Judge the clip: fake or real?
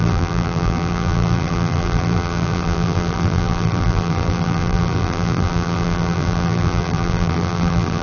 fake